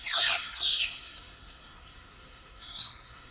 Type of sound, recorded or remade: remade